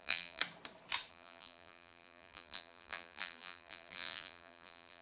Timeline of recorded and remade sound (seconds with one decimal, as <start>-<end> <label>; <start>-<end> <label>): 0.0-0.4 remade; 0.4-1.1 recorded; 1.1-5.0 remade